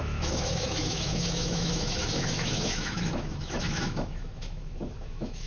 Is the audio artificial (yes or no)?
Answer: yes